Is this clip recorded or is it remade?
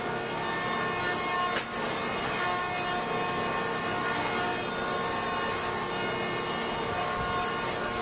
recorded